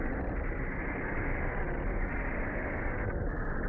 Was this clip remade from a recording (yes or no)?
no